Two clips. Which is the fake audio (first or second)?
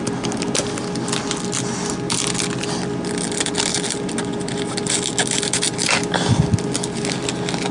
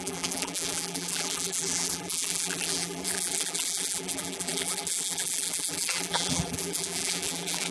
second